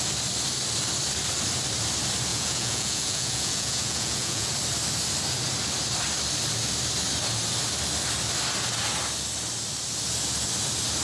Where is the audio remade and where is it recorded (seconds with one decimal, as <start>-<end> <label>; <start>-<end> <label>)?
0.0-2.3 recorded; 2.3-4.5 remade; 4.5-11.0 recorded